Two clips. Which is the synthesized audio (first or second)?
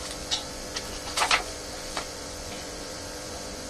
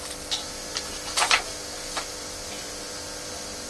first